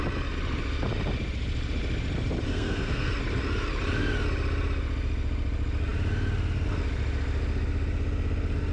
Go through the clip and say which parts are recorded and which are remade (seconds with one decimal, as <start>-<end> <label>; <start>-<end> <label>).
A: 0.0-2.5 recorded; 2.5-3.1 remade; 3.1-8.7 recorded